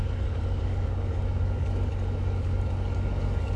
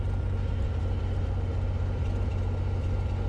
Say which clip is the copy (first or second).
first